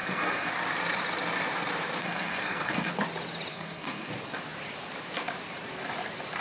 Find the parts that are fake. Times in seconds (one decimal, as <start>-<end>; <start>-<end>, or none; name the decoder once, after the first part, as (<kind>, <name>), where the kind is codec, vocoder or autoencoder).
0.0-0.5 (codec, SNAC); 2.0-2.9; 3.5-4.1